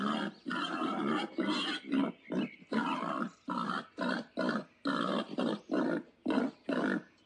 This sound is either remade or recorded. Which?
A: recorded